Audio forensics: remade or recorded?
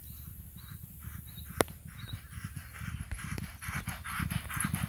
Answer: recorded